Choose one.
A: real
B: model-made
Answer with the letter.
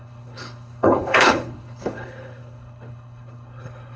B